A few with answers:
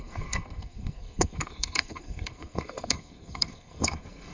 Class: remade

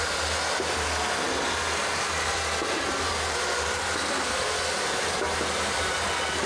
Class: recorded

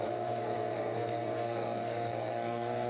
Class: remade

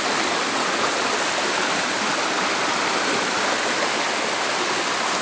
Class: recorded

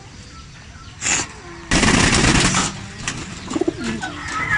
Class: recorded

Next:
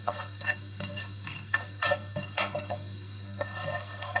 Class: remade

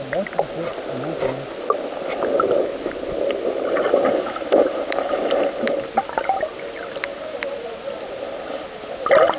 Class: recorded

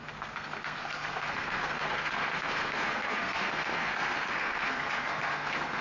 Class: remade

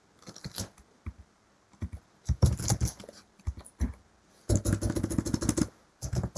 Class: recorded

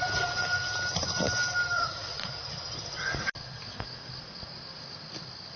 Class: recorded